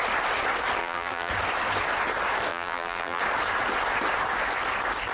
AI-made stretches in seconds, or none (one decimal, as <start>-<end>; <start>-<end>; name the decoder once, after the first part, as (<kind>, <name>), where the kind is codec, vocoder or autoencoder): 0.8-1.3 (vocoder, BigVGAN v2); 2.5-3.2